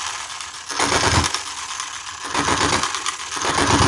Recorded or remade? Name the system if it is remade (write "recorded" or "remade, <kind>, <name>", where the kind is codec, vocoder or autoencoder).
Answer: recorded